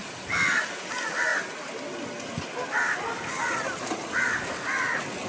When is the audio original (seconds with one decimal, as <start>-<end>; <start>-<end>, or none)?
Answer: 0.0-5.3